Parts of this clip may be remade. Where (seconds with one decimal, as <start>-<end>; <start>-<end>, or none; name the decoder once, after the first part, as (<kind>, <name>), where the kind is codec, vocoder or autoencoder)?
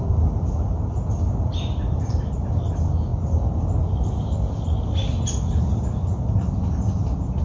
0.0-3.1 (vocoder, BigVGAN v2)